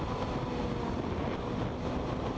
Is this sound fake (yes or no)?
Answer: no